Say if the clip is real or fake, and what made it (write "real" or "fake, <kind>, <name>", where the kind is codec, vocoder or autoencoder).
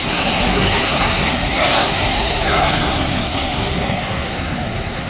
fake, codec, SNAC